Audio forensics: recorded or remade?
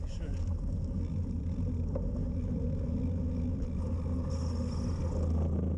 recorded